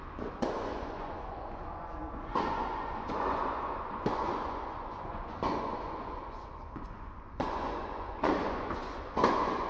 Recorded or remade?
remade